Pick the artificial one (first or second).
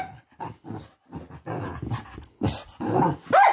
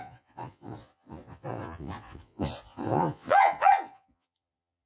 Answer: second